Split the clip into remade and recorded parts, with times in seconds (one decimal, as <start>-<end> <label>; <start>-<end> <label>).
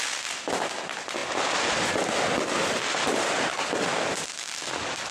0.0-5.1 recorded